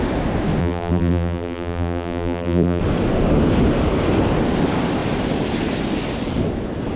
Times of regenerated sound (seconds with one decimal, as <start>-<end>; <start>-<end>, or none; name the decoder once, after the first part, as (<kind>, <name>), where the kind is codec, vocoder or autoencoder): 0.6-2.8 (vocoder, BigVGAN v2)